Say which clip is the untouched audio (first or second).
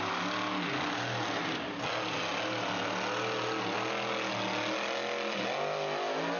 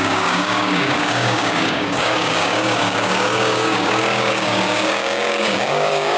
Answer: first